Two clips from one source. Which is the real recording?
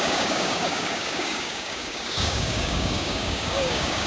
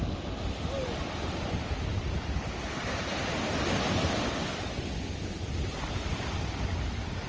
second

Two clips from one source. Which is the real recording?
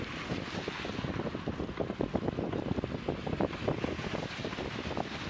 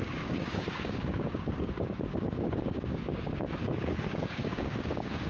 first